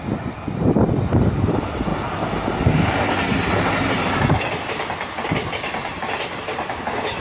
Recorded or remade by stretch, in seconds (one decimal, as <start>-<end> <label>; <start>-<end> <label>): 0.0-7.2 recorded